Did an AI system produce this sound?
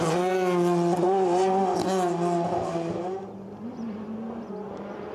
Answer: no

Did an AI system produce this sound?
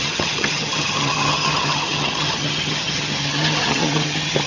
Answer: yes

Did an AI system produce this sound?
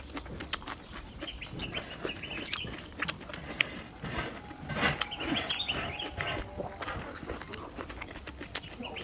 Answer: no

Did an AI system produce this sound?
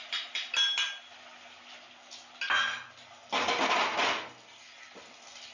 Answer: no